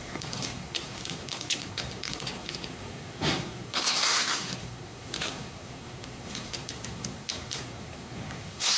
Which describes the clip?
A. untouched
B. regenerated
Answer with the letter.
B